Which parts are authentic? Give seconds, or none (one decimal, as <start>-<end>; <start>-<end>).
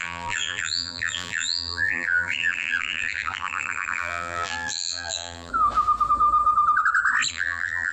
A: 5.5-7.3